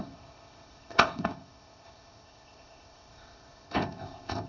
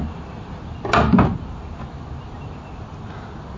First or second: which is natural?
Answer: second